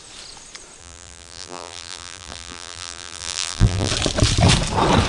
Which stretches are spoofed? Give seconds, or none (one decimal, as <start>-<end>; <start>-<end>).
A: 0.8-3.9